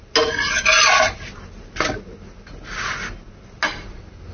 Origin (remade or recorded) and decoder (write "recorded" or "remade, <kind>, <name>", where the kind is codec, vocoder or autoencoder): recorded